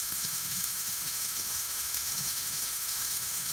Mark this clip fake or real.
fake